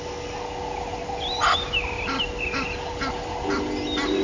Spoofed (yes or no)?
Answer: no